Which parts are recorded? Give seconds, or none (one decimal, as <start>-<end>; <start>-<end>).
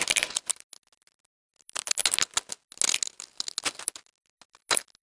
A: 0.0-5.0